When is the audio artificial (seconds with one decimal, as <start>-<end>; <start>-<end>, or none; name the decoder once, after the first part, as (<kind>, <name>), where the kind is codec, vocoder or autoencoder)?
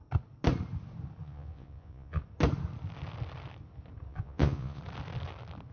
1.2-2.2 (vocoder, Vocos); 4.1-4.8